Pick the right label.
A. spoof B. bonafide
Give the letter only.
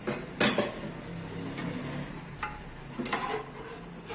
B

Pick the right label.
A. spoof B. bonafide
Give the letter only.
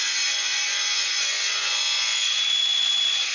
A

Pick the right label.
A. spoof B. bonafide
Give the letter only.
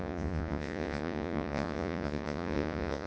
A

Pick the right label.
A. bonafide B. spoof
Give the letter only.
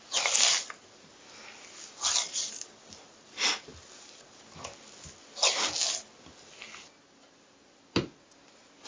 A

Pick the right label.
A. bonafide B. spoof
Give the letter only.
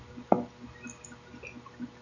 A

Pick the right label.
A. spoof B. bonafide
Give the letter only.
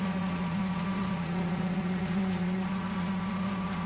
A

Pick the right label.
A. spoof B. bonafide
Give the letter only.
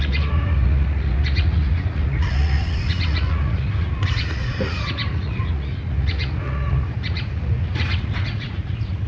A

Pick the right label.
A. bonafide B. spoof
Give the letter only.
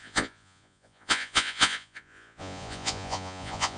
B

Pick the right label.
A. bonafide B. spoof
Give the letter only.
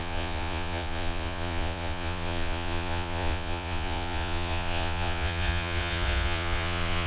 B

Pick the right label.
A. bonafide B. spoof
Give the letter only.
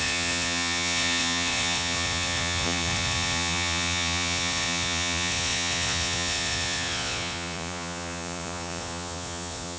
B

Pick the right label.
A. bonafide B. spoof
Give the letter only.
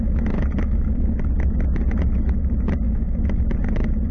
A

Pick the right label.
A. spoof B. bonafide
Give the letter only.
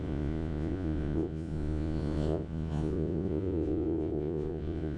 A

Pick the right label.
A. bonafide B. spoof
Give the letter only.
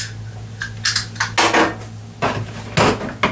A